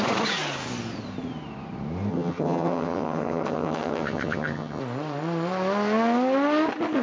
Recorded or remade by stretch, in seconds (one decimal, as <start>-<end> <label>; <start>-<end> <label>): 0.0-2.1 recorded; 2.1-4.8 remade; 4.8-7.0 recorded